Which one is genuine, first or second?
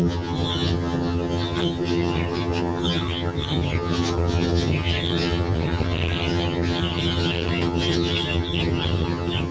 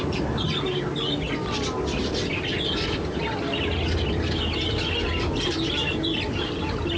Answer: second